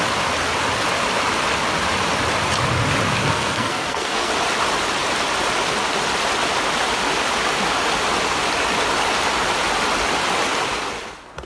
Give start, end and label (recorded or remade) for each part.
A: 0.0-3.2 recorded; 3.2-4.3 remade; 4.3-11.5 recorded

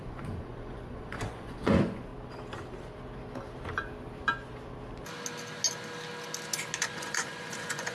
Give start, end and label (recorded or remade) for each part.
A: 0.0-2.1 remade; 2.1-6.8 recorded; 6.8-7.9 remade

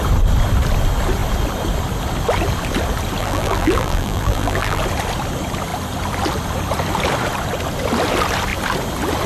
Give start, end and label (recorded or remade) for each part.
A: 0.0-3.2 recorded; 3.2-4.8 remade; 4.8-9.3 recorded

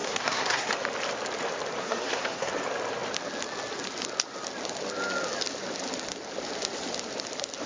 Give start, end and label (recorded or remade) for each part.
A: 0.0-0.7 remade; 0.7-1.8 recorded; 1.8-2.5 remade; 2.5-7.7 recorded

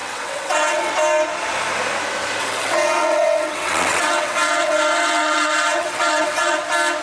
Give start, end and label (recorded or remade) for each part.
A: 0.0-0.9 remade; 0.9-2.4 recorded; 2.4-6.6 remade; 6.6-7.0 recorded

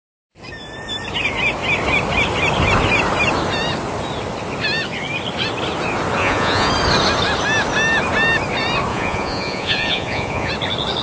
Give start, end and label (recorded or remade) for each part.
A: 0.0-6.2 recorded; 6.2-6.7 remade; 6.7-8.9 recorded; 8.9-10.5 remade; 10.5-11.0 recorded

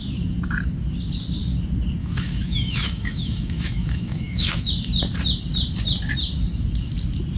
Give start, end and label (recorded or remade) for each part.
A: 0.0-2.0 recorded; 2.0-4.7 remade; 4.7-7.4 recorded

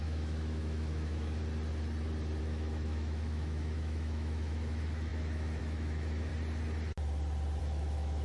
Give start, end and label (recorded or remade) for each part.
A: 0.0-1.4 remade; 1.4-2.4 recorded; 2.4-6.3 remade; 6.3-7.6 recorded; 7.6-8.2 remade